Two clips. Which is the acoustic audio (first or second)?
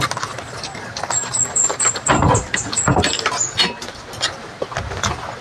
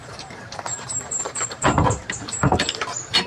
first